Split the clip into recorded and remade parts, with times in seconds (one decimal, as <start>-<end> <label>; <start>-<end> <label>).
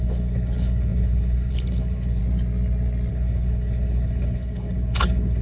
0.0-2.2 remade; 2.2-3.1 recorded; 3.1-5.4 remade